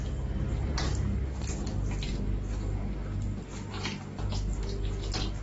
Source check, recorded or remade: recorded